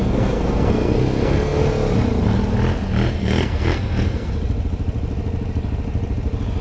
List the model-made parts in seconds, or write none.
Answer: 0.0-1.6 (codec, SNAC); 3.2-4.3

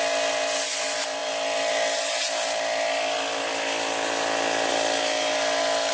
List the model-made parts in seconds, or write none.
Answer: none

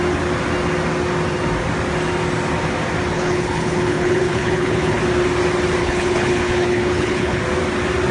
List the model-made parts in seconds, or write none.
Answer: 3.1-5.0 (codec, HILCodec); 5.8-7.4

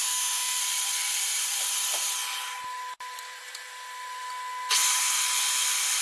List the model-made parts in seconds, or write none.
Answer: 0.0-0.6 (autoencoder, DAC-VAE)